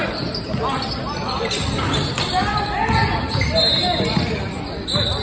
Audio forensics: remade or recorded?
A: recorded